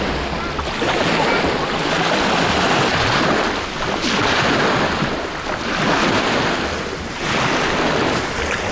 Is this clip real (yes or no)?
yes